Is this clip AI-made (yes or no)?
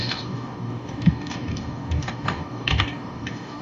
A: yes